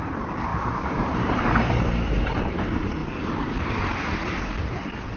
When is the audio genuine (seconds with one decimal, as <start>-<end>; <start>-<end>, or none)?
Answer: none